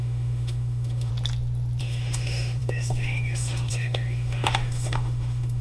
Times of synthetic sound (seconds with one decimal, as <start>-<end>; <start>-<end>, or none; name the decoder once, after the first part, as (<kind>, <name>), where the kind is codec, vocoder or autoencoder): 0.0-1.1 (autoencoder, DAC-VAE); 1.8-5.6